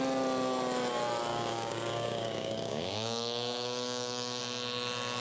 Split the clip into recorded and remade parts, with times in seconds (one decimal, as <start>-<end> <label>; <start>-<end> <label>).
0.0-1.3 recorded; 1.3-4.4 remade; 4.4-5.2 recorded